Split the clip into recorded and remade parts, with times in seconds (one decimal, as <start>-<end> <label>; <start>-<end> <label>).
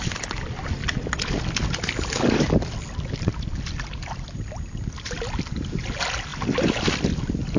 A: 0.0-7.6 recorded